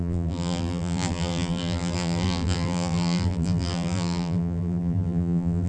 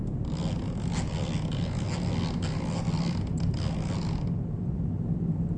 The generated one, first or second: first